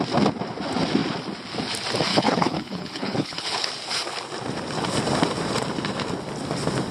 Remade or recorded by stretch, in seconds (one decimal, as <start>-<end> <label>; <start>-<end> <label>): 0.0-2.1 recorded; 2.1-3.7 remade; 3.7-6.9 recorded